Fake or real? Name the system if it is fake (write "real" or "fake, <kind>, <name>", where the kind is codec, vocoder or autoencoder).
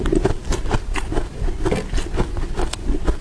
real